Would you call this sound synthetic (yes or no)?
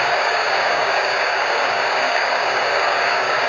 yes